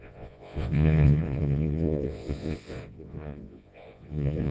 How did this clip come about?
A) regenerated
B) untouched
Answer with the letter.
A